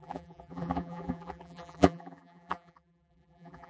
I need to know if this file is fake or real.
fake